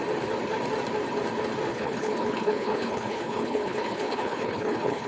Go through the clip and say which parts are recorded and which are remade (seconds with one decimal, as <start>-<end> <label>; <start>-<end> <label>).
0.0-1.7 recorded; 1.7-5.1 remade

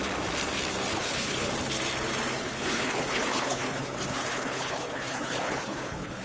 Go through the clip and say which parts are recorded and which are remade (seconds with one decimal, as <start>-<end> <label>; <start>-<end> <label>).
0.0-0.9 recorded; 0.9-1.5 remade; 1.5-2.4 recorded; 2.4-6.2 remade

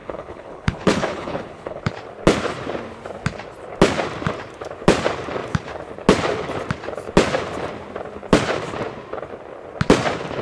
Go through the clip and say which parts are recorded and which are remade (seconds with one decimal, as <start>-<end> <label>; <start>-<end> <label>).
0.0-1.9 remade; 1.9-10.4 recorded

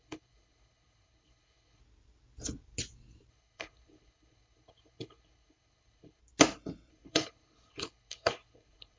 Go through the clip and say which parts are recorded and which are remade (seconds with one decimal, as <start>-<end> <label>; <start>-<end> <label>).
0.0-1.8 remade; 1.8-3.3 recorded; 3.3-6.2 remade; 6.2-6.9 recorded; 6.9-9.0 remade

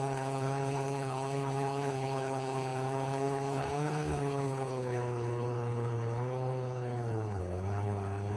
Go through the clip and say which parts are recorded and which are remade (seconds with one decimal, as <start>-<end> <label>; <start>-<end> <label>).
0.0-8.4 remade

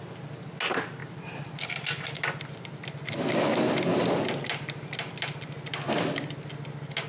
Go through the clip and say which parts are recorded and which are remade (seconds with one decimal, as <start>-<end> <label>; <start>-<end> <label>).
0.0-7.1 recorded

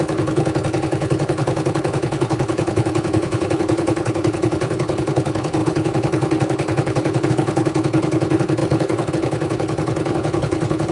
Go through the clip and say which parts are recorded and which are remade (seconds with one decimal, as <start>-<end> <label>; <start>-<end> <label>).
0.0-10.9 remade

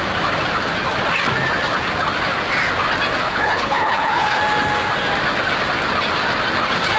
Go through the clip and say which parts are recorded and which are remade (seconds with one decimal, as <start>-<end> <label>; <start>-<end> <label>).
0.0-3.3 recorded; 3.3-4.4 remade; 4.4-7.0 recorded